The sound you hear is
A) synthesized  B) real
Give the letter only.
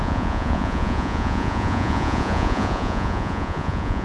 A